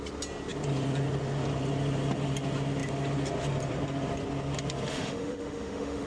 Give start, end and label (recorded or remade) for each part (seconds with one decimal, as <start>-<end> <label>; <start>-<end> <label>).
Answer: 0.0-4.9 recorded; 4.9-6.1 remade